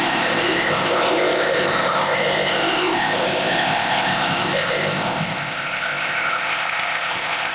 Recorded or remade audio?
remade